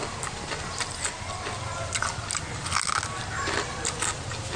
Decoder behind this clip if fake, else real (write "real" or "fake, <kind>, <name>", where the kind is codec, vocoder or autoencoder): real